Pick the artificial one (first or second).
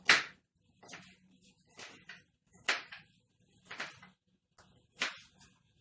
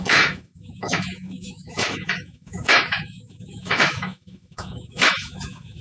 second